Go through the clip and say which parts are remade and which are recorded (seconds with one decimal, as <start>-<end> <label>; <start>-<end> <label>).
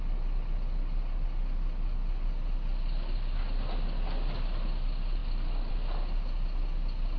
0.0-7.2 recorded